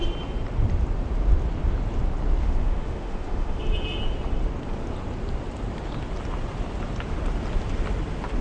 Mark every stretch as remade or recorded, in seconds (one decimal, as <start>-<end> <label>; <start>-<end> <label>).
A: 0.0-2.4 recorded; 2.4-3.6 remade; 3.6-8.4 recorded